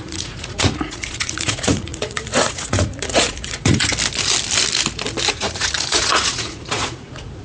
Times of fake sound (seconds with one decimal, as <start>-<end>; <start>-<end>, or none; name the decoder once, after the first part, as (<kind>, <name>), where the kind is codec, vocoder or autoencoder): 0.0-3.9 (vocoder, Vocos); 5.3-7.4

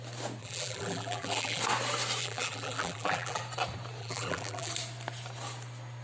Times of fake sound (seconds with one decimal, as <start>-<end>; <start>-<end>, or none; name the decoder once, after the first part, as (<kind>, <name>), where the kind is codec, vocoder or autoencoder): 0.4-1.6 (vocoder, BigVGAN v2); 2.2-3.4; 4.0-4.7

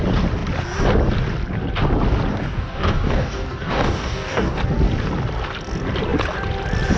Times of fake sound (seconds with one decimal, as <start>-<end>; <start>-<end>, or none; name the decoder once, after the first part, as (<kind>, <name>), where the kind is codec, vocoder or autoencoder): 2.3-4.6 (codec, DAC)

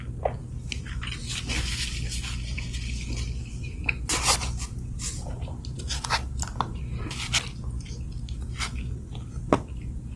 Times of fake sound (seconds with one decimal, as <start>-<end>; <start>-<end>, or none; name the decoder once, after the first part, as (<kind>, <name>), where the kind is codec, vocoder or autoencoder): 3.4-6.8 (vocoder, BigVGAN v2)

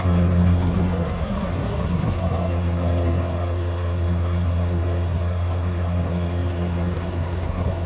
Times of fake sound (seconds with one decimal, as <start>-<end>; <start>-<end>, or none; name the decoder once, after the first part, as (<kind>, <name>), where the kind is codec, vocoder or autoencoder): 0.0-7.9 (codec, SNAC)

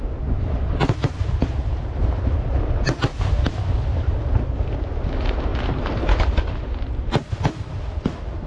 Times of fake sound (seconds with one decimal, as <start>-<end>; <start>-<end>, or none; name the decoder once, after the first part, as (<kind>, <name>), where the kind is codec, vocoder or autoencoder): 3.1-4.8 (vocoder, BigVGAN v2)